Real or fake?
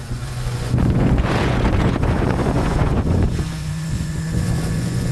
fake